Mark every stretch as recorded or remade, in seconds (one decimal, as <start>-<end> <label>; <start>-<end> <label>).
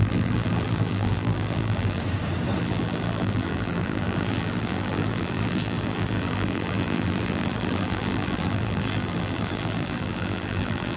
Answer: 0.0-2.0 remade; 2.0-2.6 recorded; 2.6-11.0 remade